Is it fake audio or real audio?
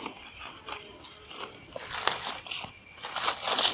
real